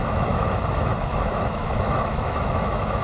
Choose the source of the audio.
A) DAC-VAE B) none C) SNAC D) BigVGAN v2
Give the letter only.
A